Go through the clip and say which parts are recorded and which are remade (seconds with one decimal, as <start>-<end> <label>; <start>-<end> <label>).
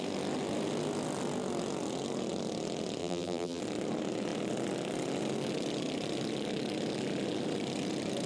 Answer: 0.0-3.0 recorded; 3.0-3.6 remade; 3.6-8.3 recorded